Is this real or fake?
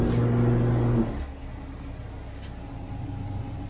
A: real